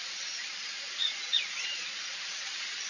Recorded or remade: remade